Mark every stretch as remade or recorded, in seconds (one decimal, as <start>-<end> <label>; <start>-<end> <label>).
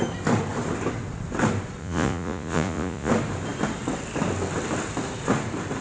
0.0-1.8 recorded; 1.8-3.1 remade; 3.1-5.8 recorded